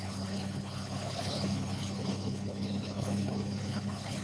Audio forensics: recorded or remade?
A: remade